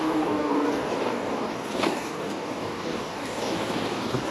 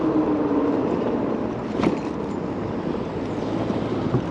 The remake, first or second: first